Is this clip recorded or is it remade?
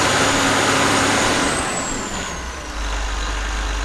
recorded